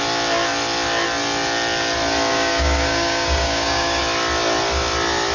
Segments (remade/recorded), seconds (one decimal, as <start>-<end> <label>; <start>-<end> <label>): 0.0-2.3 recorded; 2.3-4.0 remade; 4.0-5.3 recorded